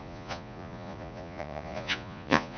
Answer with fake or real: fake